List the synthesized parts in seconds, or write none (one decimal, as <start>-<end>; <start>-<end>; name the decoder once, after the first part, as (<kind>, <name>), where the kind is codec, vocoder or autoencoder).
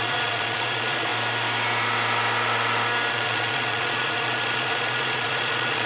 0.0-1.1 (vocoder, Vocos); 3.1-5.9